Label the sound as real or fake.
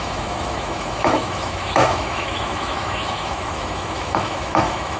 fake